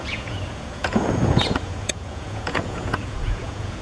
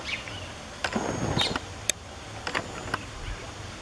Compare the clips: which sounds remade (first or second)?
first